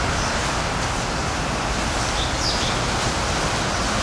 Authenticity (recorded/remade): recorded